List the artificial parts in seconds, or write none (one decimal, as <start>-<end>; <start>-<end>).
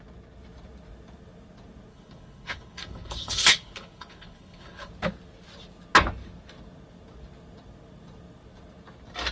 1.9-4.9